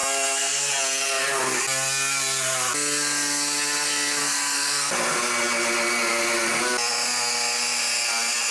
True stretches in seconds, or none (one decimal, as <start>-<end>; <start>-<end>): 0.7-4.2; 4.9-8.5